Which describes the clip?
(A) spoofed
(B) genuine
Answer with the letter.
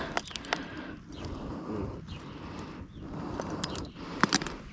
B